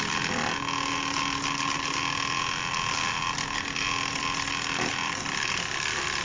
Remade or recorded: recorded